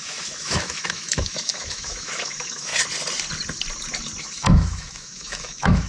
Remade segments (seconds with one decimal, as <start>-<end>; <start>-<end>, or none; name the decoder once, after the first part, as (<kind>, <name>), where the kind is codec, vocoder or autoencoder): 0.0-2.7 (autoencoder, DAC-VAE); 4.2-5.9

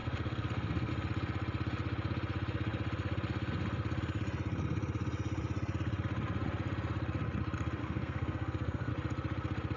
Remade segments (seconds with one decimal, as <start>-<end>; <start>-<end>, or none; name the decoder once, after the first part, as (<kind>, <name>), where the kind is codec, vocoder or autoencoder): 0.0-0.9 (codec, SNAC); 7.8-8.9

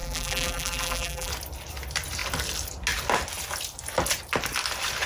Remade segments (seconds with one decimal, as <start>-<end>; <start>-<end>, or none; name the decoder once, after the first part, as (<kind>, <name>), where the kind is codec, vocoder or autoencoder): 0.0-1.3 (vocoder, BigVGAN v2)

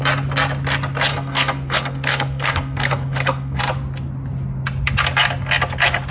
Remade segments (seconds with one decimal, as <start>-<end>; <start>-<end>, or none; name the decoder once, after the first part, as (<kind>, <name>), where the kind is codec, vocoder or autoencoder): 1.1-3.6 (codec, SNAC)

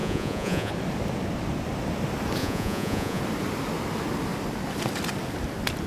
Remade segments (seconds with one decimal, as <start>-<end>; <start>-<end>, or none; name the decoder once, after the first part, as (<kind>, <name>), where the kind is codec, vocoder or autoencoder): 0.0-0.7 (vocoder, Vocos); 2.4-3.2

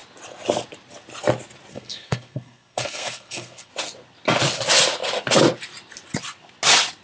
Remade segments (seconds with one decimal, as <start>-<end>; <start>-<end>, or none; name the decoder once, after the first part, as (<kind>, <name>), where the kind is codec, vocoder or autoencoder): 1.7-3.7 (codec, SNAC)